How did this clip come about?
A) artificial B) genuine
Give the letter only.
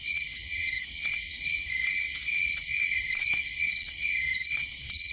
A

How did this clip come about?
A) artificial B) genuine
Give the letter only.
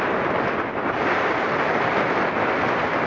B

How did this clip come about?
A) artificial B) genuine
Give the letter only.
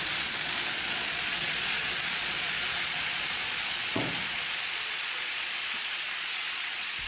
A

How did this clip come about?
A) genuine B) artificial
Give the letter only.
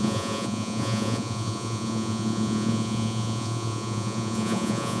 B